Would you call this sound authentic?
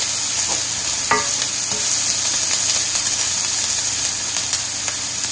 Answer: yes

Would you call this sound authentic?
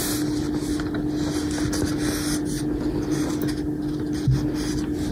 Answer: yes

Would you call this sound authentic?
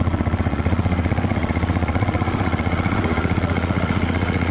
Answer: no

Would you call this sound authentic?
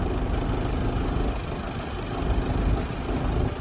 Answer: yes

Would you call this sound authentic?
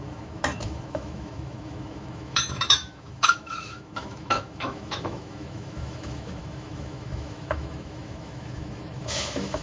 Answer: no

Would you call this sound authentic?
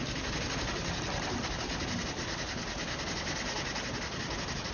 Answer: yes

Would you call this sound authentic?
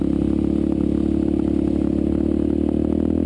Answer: yes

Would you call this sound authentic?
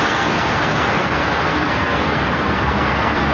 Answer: no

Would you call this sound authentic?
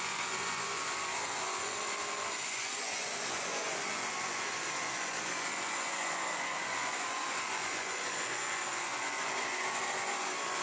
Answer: no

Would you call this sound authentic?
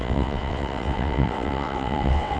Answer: no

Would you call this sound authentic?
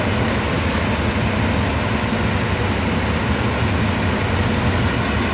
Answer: yes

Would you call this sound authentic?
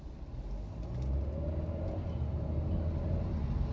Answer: yes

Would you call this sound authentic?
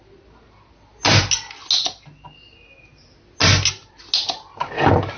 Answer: yes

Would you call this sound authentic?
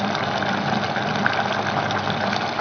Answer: yes